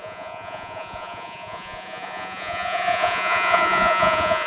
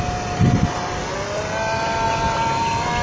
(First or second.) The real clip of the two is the second